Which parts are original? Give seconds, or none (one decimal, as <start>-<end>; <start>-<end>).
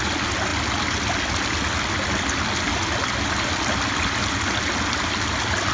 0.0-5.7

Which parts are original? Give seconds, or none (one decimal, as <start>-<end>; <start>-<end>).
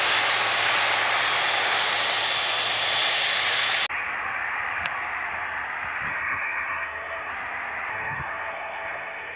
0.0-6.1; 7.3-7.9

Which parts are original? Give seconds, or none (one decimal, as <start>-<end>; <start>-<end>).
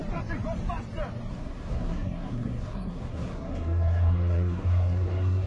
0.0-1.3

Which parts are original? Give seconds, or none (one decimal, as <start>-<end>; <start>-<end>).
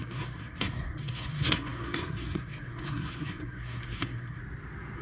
4.4-5.0